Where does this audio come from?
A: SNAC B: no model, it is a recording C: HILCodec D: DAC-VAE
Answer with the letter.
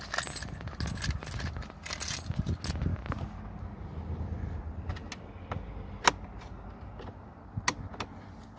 B